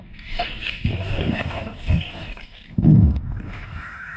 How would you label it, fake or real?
fake